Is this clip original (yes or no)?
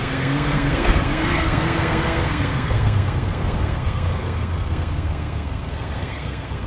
no